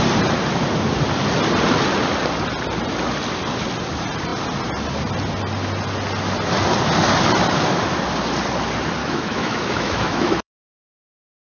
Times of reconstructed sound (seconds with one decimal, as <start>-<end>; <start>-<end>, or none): 9.0-10.7